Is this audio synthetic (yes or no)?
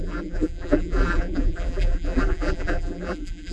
yes